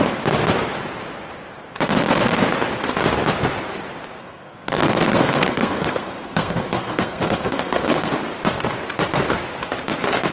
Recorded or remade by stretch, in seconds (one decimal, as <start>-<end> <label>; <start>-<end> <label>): 0.0-4.2 recorded; 4.2-8.1 remade; 8.1-10.3 recorded